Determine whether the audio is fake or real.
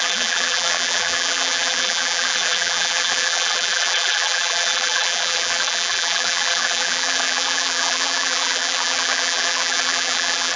fake